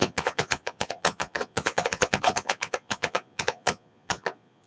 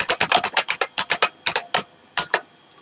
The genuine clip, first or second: second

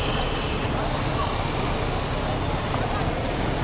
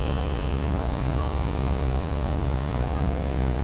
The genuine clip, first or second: first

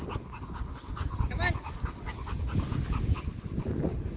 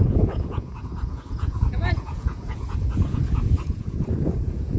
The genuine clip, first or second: first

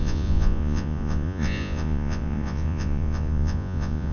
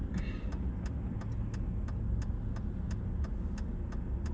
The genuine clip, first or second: second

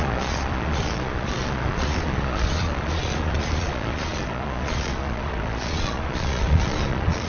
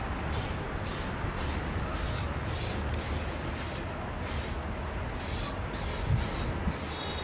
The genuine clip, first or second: second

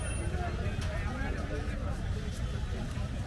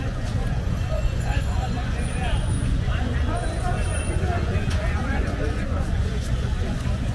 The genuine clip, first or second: first